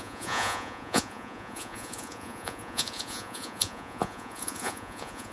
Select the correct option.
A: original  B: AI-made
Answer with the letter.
B